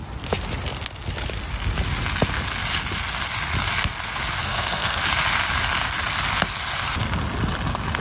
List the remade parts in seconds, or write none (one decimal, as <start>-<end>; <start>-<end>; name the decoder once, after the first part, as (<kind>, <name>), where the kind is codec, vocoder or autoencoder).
4.4-5.0 (codec, SNAC)